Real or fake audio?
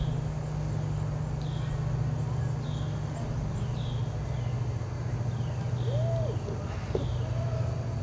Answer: real